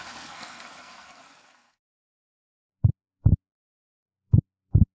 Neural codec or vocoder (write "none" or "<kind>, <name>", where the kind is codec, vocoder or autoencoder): codec, SNAC